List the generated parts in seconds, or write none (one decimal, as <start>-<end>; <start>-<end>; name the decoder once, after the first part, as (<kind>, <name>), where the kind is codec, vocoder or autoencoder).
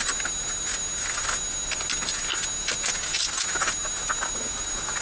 none